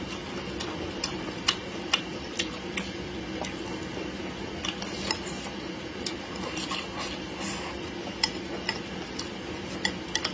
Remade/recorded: recorded